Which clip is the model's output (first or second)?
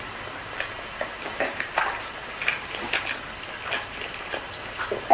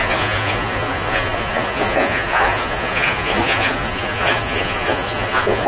second